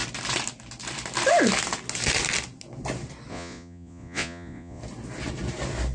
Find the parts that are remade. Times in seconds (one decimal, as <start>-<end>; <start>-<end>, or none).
3.3-4.8